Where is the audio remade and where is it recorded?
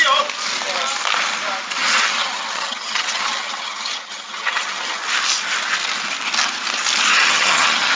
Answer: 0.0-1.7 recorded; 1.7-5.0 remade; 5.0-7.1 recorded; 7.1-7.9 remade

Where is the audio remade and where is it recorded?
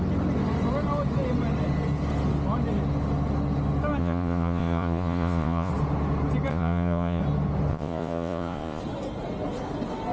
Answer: 0.0-4.0 recorded; 4.0-5.7 remade; 5.7-6.5 recorded; 6.5-7.2 remade; 7.2-7.7 recorded; 7.7-8.8 remade; 8.8-10.1 recorded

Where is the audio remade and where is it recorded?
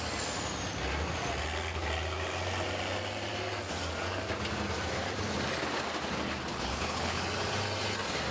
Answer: 0.0-6.5 recorded; 6.5-7.2 remade; 7.2-8.3 recorded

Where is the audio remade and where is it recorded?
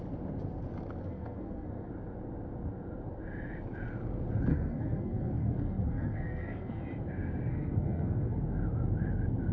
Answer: 0.0-1.0 recorded; 1.0-1.9 remade; 1.9-4.5 recorded; 4.5-6.8 remade; 6.8-7.5 recorded; 7.5-8.4 remade; 8.4-9.5 recorded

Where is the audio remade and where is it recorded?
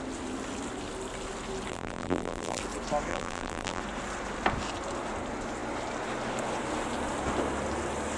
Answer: 0.0-1.7 recorded; 1.7-2.6 remade; 2.6-3.1 recorded; 3.1-3.8 remade; 3.8-8.2 recorded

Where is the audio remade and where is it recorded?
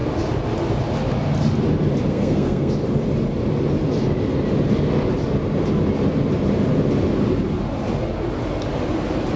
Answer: 0.0-2.1 recorded; 2.1-2.7 remade; 2.7-9.4 recorded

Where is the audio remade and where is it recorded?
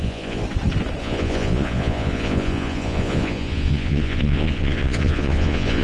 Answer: 0.0-0.4 remade; 0.4-1.0 recorded; 1.0-5.8 remade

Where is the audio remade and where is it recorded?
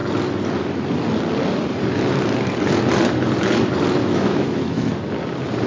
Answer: 0.0-4.0 recorded; 4.0-4.9 remade; 4.9-5.7 recorded